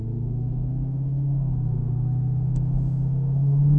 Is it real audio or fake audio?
fake